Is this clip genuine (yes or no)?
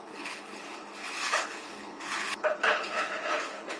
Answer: no